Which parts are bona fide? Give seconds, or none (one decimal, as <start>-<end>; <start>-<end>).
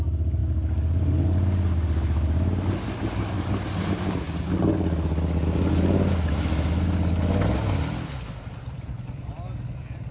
0.0-10.1